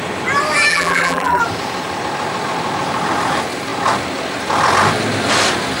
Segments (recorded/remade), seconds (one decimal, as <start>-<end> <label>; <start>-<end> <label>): 0.0-0.7 recorded; 0.7-1.4 remade; 1.4-5.8 recorded